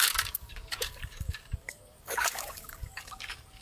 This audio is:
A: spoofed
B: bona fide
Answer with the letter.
A